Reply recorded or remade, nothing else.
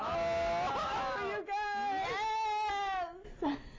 recorded